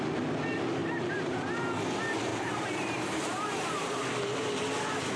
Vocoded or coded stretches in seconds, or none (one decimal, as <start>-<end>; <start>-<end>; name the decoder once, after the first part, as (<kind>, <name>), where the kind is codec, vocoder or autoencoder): 0.8-1.6 (vocoder, BigVGAN v2); 2.3-4.0